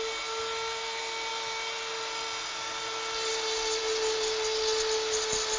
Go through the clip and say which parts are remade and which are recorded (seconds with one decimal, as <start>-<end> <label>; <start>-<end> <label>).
0.0-5.6 recorded